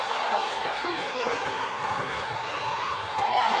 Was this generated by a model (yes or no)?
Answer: yes